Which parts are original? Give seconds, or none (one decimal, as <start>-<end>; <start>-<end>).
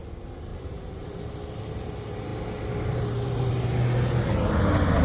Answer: 0.0-0.5; 1.3-5.0